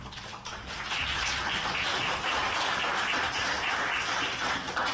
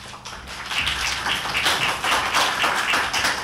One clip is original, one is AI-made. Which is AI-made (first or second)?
first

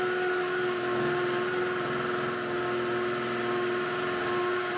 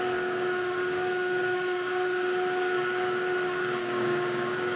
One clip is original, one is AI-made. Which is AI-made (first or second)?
second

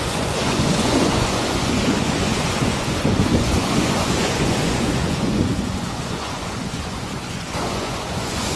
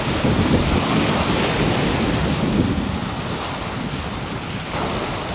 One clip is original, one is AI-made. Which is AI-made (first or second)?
first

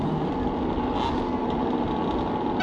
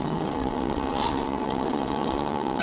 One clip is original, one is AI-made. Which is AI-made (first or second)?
second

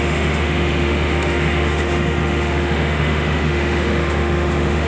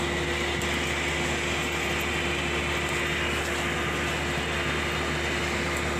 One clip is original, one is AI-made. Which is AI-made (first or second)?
first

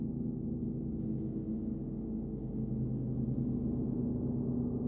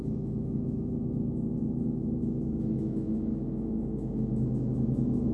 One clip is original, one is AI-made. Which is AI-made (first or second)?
second